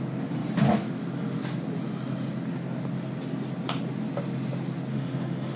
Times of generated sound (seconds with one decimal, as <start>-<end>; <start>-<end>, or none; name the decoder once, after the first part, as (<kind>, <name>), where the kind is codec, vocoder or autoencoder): 4.9-5.6 (autoencoder, DAC-VAE)